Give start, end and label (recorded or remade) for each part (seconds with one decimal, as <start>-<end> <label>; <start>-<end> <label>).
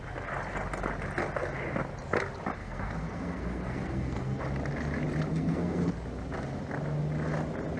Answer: 0.0-2.6 recorded; 2.6-4.4 remade; 4.4-5.3 recorded; 5.3-5.9 remade; 5.9-7.8 recorded